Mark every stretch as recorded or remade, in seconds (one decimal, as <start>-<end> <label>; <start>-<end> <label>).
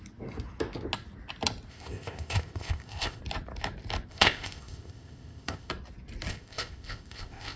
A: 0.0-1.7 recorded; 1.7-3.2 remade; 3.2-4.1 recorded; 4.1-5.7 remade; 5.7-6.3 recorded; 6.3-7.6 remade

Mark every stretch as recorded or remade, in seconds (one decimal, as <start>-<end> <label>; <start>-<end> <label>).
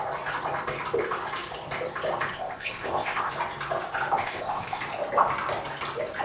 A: 0.0-2.3 recorded; 2.3-3.3 remade; 3.3-4.2 recorded; 4.2-4.8 remade; 4.8-6.2 recorded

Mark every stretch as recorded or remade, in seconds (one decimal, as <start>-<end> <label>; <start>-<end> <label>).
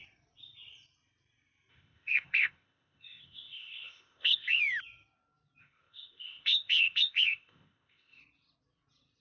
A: 0.0-1.7 recorded; 1.7-4.6 remade; 4.6-5.6 recorded; 5.6-8.2 remade; 8.2-9.2 recorded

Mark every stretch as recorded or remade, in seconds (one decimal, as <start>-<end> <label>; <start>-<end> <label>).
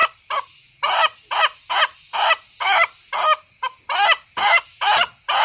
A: 0.0-5.4 recorded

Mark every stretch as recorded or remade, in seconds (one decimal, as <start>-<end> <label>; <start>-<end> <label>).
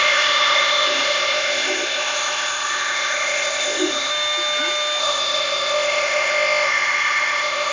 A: 0.0-4.1 remade; 4.1-5.0 recorded; 5.0-7.7 remade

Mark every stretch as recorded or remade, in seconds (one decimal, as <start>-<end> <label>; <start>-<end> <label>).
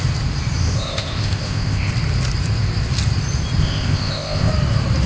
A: 0.0-0.6 recorded; 0.6-1.9 remade; 1.9-3.6 recorded; 3.6-4.5 remade; 4.5-5.1 recorded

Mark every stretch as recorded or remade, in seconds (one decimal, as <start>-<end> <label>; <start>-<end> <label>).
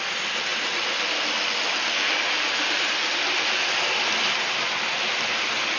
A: 0.0-5.8 recorded